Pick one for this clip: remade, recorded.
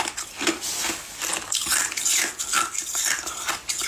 recorded